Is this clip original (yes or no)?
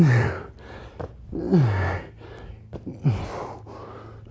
yes